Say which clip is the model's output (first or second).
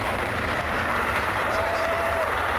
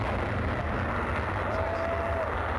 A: first